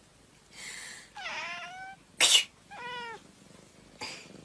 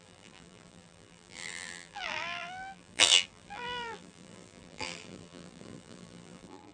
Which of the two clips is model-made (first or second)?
second